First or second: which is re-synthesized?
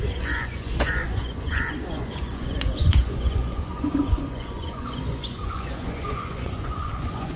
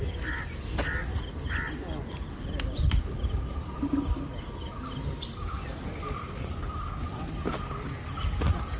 first